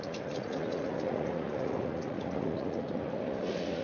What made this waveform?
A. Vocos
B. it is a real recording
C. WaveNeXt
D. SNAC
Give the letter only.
A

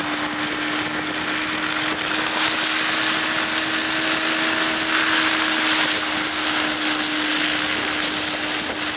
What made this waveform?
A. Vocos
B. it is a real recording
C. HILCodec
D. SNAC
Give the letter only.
B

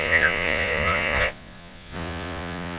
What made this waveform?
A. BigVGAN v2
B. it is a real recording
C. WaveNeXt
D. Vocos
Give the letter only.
D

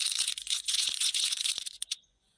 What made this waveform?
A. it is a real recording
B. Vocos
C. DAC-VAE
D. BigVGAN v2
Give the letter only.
B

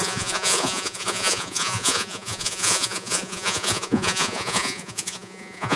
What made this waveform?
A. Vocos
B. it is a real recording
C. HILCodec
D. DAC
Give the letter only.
A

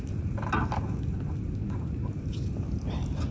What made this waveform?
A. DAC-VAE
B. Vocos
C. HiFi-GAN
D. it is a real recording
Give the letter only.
D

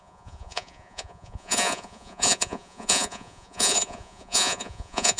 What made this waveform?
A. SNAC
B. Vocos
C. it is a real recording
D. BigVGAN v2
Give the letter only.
B